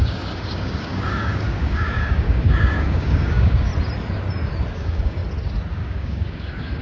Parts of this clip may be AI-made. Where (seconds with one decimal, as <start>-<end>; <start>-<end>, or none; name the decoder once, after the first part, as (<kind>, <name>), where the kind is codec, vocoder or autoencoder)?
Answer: 0.0-3.7 (codec, DAC); 4.7-5.2; 5.7-6.8